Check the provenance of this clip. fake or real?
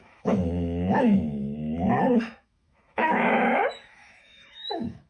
fake